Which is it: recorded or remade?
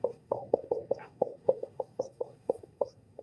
remade